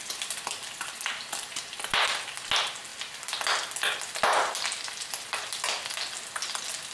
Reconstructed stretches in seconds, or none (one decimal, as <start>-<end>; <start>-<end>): none